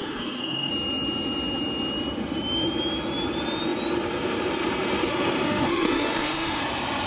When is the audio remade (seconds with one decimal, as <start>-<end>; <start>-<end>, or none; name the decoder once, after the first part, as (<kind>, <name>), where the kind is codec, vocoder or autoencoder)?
0.0-0.7 (autoencoder, DAC-VAE); 5.1-6.6